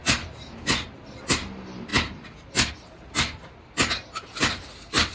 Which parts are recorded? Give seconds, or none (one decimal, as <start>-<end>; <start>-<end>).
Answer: 0.0-5.1